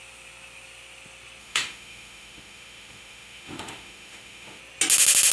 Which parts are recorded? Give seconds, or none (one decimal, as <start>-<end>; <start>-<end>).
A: 0.0-1.4; 4.6-5.3